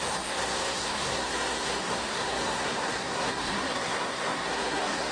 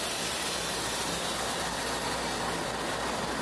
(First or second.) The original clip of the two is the second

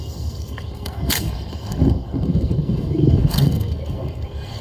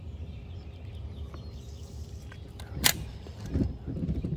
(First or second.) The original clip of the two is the second